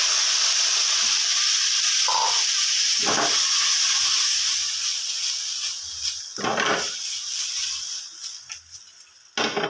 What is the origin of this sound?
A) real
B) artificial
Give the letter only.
A